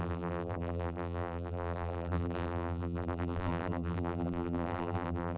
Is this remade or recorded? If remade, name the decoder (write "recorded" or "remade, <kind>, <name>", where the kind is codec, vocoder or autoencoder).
remade, vocoder, BigVGAN v2